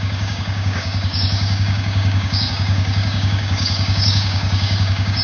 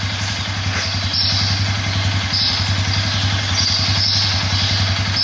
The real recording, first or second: second